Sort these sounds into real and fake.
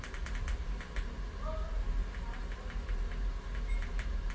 real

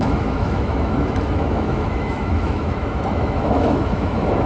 fake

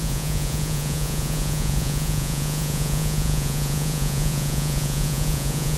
fake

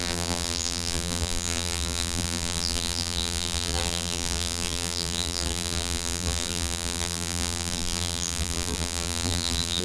fake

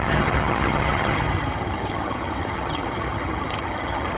fake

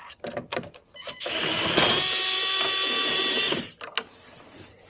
real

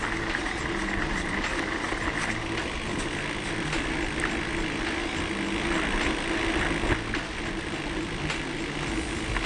real